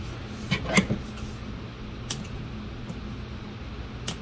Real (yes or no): yes